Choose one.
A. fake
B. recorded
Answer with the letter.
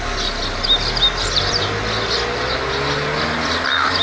B